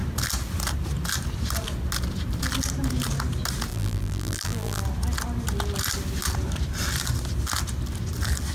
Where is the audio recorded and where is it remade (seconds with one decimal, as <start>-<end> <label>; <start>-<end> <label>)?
0.0-3.7 recorded; 3.7-4.8 remade; 4.8-8.5 recorded